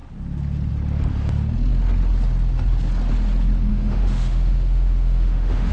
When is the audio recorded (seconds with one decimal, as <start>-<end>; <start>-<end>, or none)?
0.0-3.7